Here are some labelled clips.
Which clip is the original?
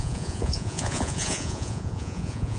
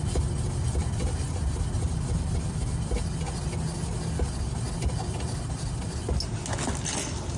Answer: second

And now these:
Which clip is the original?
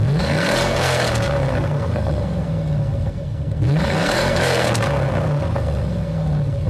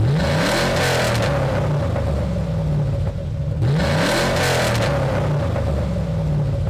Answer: second